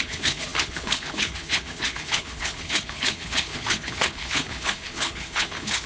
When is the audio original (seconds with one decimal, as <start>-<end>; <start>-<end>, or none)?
none